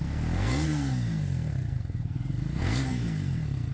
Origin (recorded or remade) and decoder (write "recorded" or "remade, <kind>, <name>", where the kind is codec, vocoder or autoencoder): remade, codec, SNAC